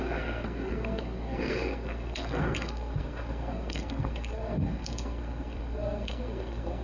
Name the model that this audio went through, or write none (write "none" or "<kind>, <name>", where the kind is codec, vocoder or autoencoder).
codec, SNAC